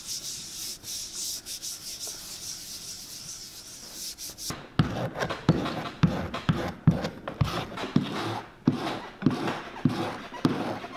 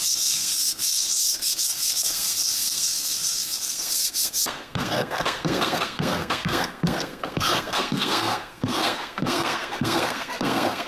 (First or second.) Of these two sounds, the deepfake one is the second